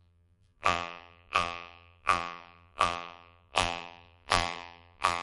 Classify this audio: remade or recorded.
remade